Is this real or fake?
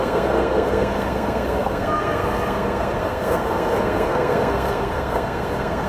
fake